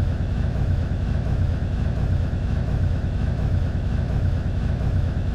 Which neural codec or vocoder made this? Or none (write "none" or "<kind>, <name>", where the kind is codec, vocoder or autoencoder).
autoencoder, DAC-VAE